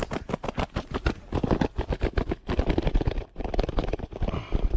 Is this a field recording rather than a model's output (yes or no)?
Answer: yes